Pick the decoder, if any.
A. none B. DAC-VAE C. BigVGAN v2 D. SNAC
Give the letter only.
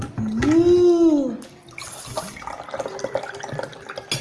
A